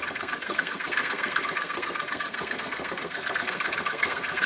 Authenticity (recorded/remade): remade